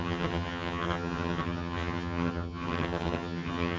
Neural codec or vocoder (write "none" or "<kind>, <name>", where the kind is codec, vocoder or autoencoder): vocoder, HiFi-GAN